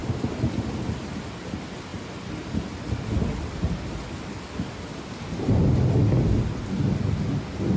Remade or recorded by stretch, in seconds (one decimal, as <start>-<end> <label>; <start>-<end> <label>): 0.0-7.8 recorded